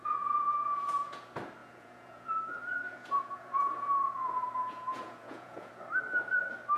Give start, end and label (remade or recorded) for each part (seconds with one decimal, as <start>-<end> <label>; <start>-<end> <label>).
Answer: 0.0-1.2 remade; 1.2-1.6 recorded; 1.6-5.7 remade; 5.7-6.8 recorded